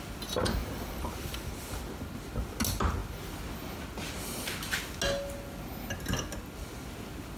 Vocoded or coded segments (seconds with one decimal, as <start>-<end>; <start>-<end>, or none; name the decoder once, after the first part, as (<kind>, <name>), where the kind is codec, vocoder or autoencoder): 0.6-1.9 (vocoder, BigVGAN v2)